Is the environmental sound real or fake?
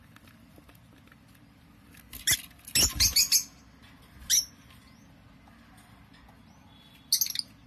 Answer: real